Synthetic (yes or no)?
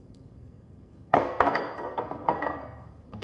yes